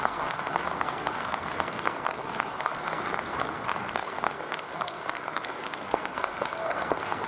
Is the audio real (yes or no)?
no